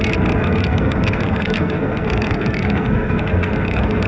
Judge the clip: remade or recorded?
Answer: remade